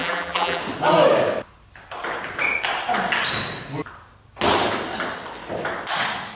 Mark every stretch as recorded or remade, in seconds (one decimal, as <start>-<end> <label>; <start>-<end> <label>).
0.0-0.6 remade; 0.6-6.3 recorded

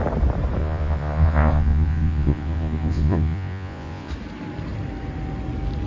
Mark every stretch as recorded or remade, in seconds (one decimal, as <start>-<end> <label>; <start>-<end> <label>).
0.0-0.6 recorded; 0.6-4.1 remade; 4.1-5.9 recorded

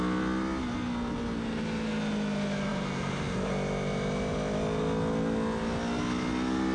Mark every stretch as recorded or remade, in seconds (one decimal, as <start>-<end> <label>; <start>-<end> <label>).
0.0-2.7 recorded; 2.7-3.5 remade; 3.5-6.7 recorded